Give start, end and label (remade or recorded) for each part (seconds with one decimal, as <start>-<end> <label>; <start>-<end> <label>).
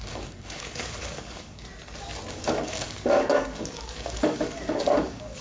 0.0-1.7 remade; 1.7-2.3 recorded; 2.3-5.4 remade